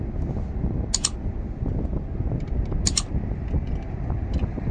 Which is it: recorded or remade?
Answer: recorded